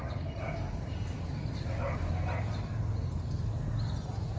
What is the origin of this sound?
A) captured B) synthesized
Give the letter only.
A